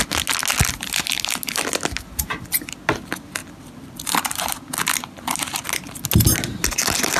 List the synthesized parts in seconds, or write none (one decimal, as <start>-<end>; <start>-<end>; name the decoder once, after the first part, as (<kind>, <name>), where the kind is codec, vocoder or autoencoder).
3.4-4.4 (vocoder, BigVGAN v2)